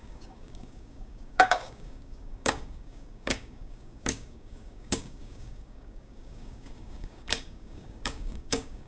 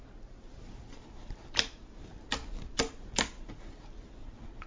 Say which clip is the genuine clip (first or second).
second